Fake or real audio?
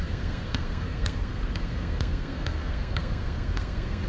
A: fake